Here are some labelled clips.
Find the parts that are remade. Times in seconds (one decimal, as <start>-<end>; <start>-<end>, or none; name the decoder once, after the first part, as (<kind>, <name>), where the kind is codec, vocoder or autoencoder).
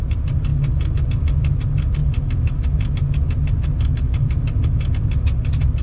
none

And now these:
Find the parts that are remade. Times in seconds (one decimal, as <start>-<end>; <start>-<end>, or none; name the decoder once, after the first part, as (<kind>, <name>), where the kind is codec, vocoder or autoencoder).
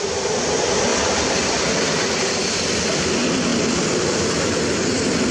none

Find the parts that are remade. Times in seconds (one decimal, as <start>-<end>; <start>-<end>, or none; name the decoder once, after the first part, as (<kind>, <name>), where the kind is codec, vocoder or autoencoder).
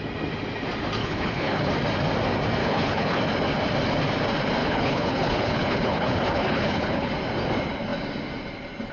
1.0-1.7 (codec, HILCodec); 2.6-3.2; 4.6-7.1